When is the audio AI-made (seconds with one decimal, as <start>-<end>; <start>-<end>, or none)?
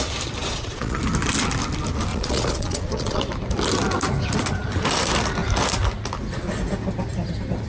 0.4-1.0; 2.1-3.2